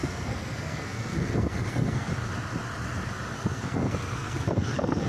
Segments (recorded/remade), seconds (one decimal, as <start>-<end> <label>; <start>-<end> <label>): 0.0-2.1 remade; 2.1-3.3 recorded; 3.3-5.1 remade